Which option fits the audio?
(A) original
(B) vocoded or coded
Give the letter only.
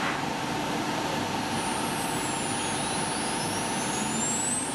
A